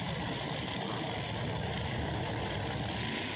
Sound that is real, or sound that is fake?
real